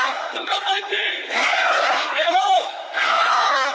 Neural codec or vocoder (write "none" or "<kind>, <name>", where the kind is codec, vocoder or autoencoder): codec, SNAC